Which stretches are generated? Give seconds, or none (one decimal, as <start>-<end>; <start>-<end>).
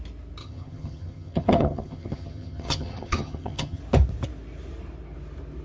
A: 0.4-3.8